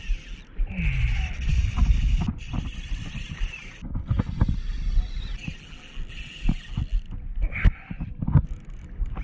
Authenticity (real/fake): real